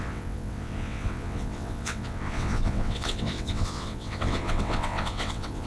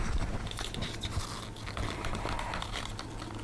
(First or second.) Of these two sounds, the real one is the second